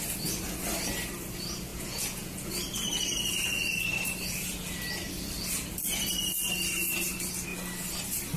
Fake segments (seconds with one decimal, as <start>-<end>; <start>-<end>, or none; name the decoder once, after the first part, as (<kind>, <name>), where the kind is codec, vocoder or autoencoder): 1.7-2.5 (vocoder, Vocos)